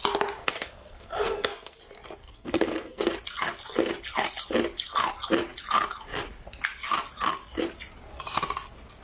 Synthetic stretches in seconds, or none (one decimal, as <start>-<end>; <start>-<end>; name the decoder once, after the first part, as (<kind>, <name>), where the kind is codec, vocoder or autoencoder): 0.4-1.8 (codec, SNAC); 2.2-3.1